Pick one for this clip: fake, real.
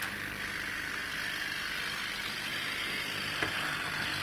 real